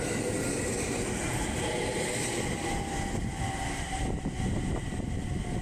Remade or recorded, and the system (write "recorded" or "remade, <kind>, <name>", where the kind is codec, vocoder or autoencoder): recorded